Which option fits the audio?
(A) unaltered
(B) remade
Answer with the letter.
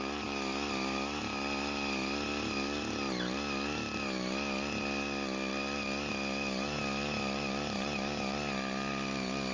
A